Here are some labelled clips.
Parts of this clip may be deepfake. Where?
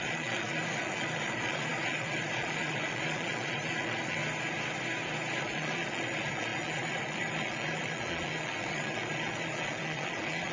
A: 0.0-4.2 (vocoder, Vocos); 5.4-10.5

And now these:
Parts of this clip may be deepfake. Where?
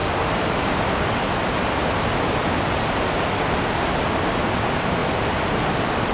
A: 0.0-3.7 (vocoder, BigVGAN v2)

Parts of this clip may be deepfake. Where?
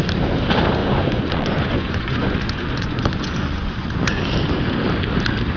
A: 0.8-4.2 (vocoder, Vocos)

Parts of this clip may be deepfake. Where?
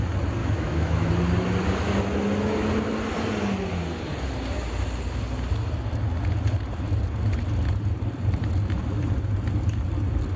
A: 0.4-1.1 (autoencoder, DAC-VAE)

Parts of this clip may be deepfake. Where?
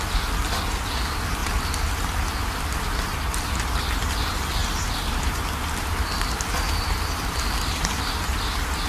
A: none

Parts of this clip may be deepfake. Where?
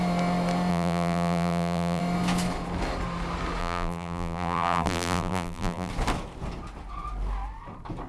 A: 0.7-2.0 (vocoder, BigVGAN v2); 3.6-5.9